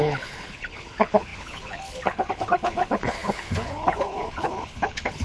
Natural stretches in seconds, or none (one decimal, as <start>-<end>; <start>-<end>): none